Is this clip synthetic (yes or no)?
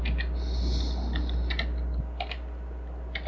no